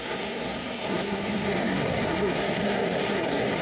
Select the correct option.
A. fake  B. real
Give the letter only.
A